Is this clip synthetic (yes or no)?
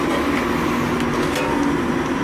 no